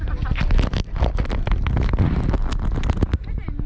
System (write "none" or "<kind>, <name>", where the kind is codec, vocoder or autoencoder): none